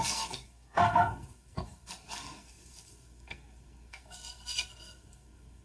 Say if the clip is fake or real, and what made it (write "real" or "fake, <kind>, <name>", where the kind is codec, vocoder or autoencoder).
fake, codec, SNAC